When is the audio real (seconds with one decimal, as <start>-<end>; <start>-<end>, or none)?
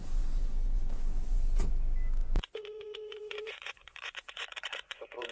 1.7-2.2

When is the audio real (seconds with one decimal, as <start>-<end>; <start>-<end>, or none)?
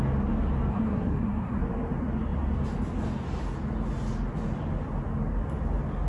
0.0-0.7; 1.6-6.1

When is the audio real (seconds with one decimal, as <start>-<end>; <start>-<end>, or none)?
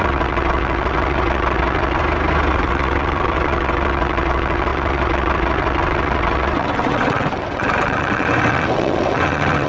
2.0-2.5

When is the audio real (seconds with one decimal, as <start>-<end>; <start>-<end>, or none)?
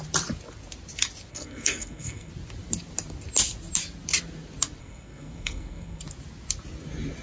0.0-1.3; 2.3-4.8; 6.0-7.2